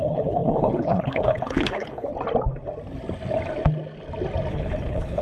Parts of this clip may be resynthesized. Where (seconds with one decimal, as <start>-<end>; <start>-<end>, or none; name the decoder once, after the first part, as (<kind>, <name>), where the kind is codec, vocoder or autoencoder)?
0.0-2.1 (codec, HILCodec); 4.5-5.2

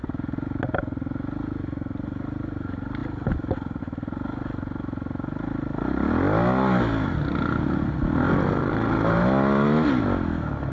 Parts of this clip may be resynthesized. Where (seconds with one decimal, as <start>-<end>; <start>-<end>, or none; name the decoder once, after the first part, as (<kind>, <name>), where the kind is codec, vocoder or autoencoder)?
none

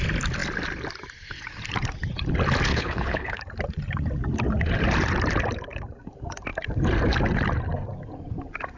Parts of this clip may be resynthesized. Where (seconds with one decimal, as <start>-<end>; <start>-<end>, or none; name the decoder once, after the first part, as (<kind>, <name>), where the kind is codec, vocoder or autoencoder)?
2.7-3.4 (codec, HILCodec)

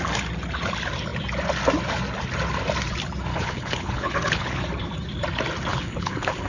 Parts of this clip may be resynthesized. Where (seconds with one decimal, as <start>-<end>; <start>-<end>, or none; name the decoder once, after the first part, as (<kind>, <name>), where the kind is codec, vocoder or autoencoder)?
3.3-4.6 (codec, HILCodec); 5.7-6.5

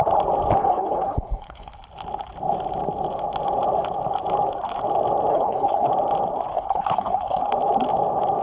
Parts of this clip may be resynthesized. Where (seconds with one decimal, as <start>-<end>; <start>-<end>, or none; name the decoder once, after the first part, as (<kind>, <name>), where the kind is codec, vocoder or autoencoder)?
0.6-1.7 (codec, HILCodec); 5.3-5.9; 6.5-7.4

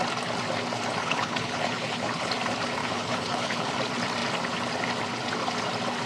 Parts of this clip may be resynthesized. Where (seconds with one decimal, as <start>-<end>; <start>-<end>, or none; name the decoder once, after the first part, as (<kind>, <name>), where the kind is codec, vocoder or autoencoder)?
1.0-2.3 (codec, HILCodec); 2.8-3.7